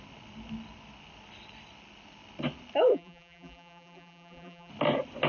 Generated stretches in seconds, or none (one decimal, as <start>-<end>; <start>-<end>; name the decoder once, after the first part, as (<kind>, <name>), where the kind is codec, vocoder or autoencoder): 2.9-4.7 (vocoder, BigVGAN v2)